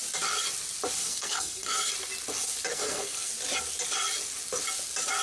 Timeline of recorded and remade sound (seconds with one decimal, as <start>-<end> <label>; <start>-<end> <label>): 0.0-1.0 recorded; 1.0-1.9 remade; 1.9-2.7 recorded; 2.7-3.3 remade; 3.3-5.2 recorded